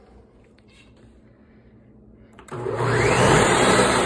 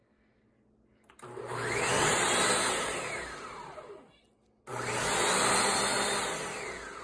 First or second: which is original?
second